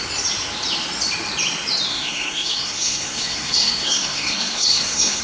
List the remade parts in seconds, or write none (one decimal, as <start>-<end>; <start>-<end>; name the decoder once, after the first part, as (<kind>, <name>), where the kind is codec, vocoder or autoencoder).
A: 1.9-5.2 (codec, SNAC)